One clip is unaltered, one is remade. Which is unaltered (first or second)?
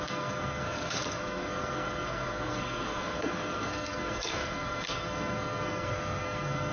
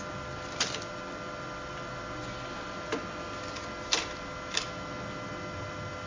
second